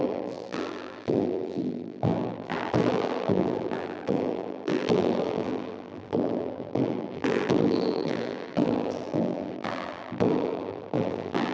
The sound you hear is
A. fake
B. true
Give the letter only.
A